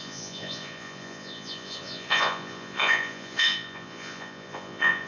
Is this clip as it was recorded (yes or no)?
no